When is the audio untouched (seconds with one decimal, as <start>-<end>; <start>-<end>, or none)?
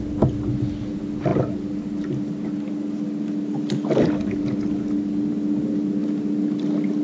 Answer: 0.0-7.0